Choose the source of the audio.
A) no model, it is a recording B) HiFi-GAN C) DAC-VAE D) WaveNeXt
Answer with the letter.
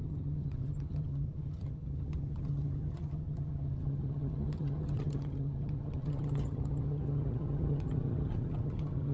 B